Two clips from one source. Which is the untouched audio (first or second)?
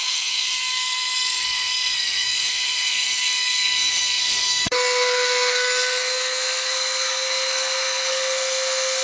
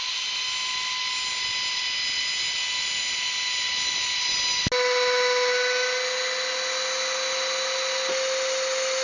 second